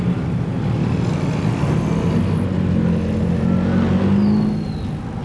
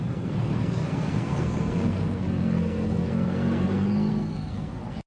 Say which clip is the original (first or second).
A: first